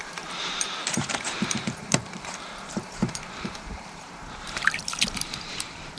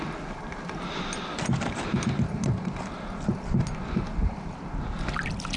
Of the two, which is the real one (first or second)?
second